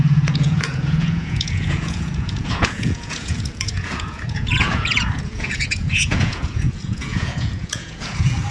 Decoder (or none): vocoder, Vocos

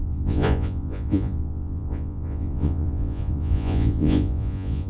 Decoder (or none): vocoder, Vocos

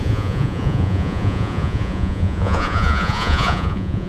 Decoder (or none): vocoder, Vocos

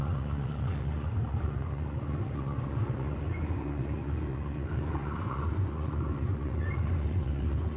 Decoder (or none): vocoder, Vocos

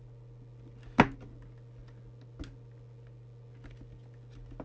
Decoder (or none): none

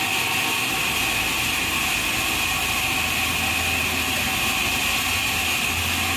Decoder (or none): none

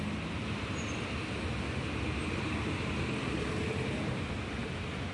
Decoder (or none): none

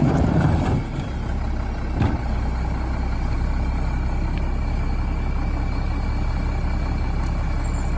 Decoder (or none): none